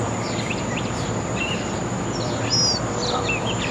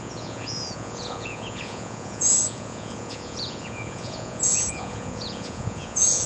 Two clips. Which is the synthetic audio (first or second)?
second